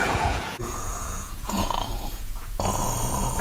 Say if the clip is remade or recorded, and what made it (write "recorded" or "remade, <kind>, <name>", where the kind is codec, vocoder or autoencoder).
remade, vocoder, Vocos